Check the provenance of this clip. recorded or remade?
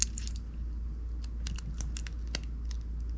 recorded